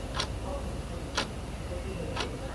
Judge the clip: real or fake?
real